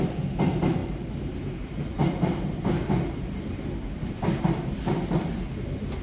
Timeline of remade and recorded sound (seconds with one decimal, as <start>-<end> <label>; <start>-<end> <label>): 0.0-6.0 recorded